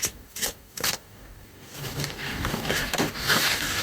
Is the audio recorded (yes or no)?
no